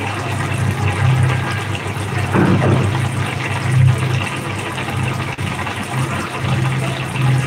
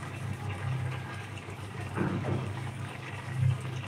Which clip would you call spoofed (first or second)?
second